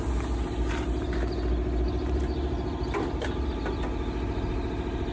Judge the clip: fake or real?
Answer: real